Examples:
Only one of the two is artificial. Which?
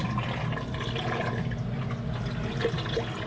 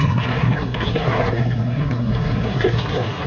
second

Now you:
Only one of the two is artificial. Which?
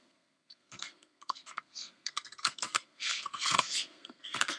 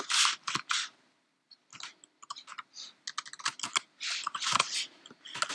first